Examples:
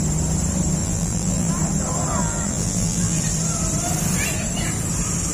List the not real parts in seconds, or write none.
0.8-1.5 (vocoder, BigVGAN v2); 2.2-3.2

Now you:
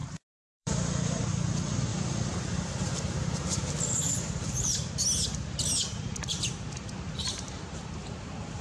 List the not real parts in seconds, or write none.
0.0-1.2 (vocoder, BigVGAN v2); 1.9-4.9; 6.3-8.6

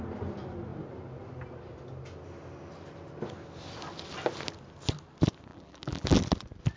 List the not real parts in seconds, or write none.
5.5-6.2 (vocoder, BigVGAN v2)

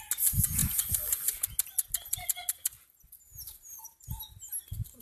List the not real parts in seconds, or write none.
0.6-1.4 (vocoder, BigVGAN v2); 3.3-4.0

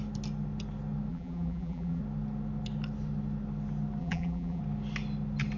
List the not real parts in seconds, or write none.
1.1-2.0 (vocoder, BigVGAN v2); 4.0-4.6